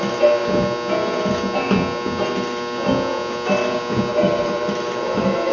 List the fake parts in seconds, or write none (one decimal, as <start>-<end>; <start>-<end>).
4.1-5.5